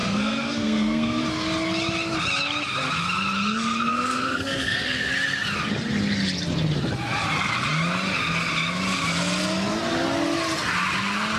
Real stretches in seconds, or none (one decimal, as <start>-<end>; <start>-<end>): 1.2-3.9; 5.1-11.4